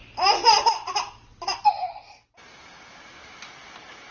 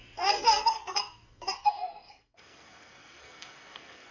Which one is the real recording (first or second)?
first